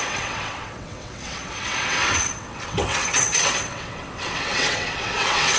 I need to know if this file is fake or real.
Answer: fake